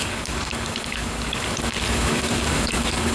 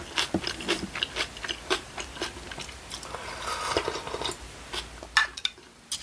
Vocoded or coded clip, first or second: first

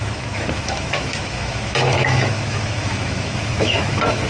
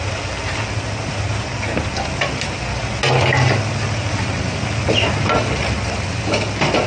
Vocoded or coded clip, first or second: first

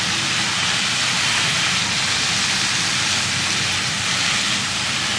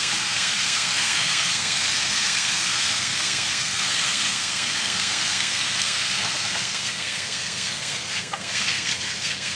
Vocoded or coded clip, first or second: second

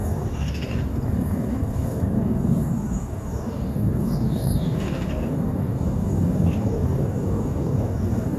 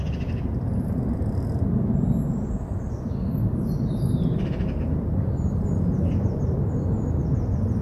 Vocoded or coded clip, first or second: first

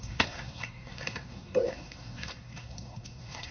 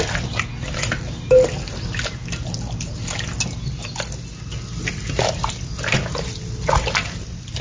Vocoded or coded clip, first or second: first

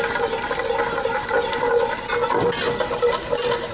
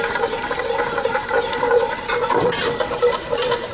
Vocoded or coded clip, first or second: second